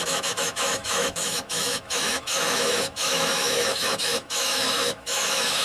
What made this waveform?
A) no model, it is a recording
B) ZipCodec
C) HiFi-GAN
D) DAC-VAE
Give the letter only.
D